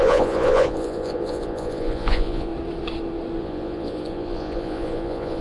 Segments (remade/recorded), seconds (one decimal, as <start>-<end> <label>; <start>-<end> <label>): 0.0-2.5 remade; 2.5-3.4 recorded; 3.4-5.4 remade